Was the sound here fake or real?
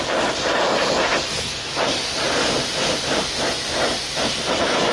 real